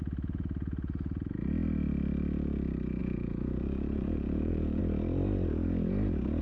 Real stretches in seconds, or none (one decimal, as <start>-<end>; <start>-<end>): 0.0-3.0; 4.8-6.4